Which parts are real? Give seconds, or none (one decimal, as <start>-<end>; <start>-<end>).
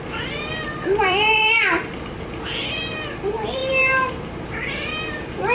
none